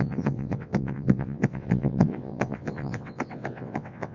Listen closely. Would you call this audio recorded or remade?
remade